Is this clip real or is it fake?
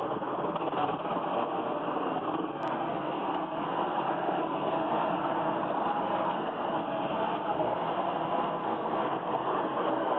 fake